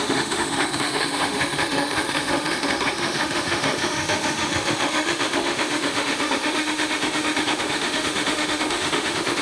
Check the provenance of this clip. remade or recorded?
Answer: remade